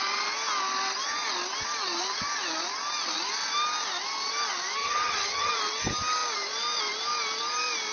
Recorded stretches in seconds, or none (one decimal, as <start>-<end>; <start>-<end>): 0.0-4.8; 5.5-7.9